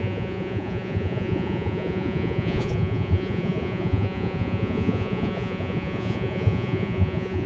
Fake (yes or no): yes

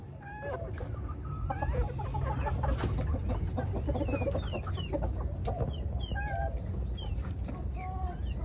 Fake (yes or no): no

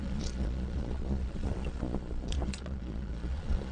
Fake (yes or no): yes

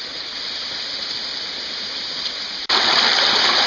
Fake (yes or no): no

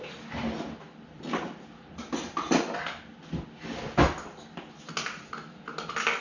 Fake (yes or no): no